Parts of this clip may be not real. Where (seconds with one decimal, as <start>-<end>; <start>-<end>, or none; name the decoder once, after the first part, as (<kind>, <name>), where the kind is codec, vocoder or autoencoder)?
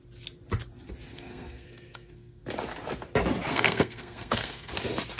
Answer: 1.1-2.4 (codec, SNAC); 3.5-4.7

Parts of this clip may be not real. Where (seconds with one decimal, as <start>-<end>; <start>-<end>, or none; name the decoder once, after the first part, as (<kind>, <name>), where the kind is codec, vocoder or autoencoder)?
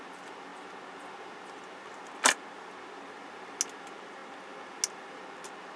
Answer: none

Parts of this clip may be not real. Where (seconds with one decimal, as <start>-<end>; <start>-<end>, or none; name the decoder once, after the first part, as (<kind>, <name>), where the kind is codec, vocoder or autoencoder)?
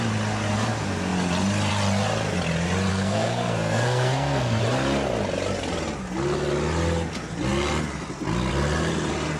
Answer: 2.9-4.6 (codec, SNAC)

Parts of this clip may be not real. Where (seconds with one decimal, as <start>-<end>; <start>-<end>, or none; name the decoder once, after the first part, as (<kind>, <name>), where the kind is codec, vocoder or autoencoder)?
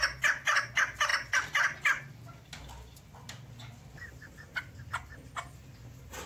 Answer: none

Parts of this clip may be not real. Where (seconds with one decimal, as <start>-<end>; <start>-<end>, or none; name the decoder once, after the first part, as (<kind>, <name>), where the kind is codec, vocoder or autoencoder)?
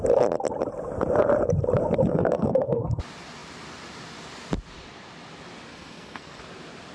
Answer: 2.1-3.0 (codec, SNAC); 5.7-6.4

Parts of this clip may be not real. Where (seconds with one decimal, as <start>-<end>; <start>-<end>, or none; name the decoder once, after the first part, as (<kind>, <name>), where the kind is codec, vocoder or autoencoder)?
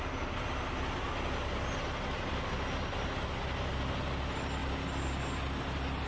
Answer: none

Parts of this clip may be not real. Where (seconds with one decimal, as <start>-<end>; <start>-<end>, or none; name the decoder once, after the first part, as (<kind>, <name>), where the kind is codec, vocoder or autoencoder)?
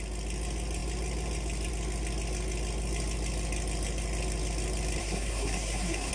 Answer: 5.0-6.1 (codec, SNAC)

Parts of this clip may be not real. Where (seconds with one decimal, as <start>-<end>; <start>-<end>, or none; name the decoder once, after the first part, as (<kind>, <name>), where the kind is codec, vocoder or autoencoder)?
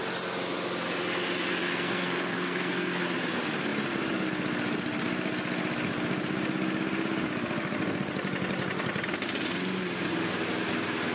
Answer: 1.7-3.0 (codec, SNAC)